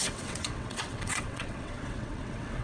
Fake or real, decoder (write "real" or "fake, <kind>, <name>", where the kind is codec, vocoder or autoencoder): fake, vocoder, WaveNeXt